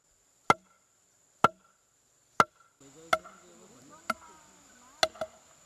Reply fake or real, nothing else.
real